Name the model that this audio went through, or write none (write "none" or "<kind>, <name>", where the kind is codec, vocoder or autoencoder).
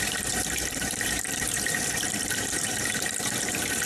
vocoder, BigVGAN v2